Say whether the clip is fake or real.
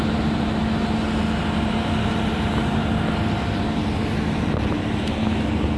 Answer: real